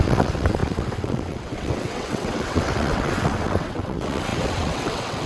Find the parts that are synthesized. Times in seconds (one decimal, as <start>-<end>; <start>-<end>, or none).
0.0-5.3